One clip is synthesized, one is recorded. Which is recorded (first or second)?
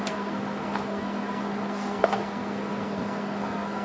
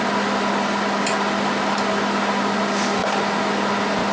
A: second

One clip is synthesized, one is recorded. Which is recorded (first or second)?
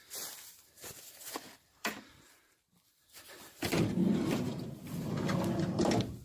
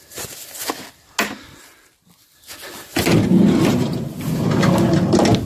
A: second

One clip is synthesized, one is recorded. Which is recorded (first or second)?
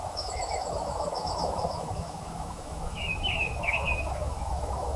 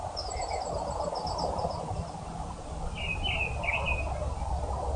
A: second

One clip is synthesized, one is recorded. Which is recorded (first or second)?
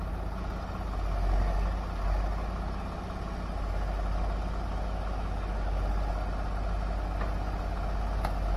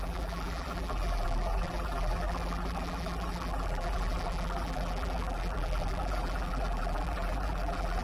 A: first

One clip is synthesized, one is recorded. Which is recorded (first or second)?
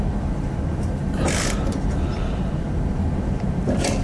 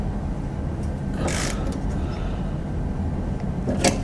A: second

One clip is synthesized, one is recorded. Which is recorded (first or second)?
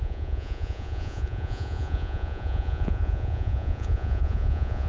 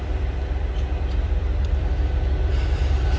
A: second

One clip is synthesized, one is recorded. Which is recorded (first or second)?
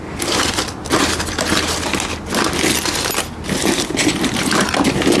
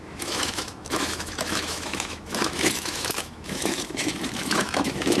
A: first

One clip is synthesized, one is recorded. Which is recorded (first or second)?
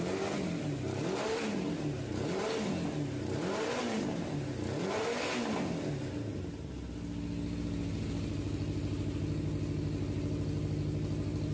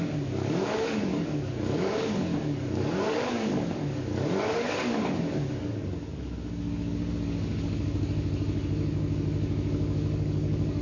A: first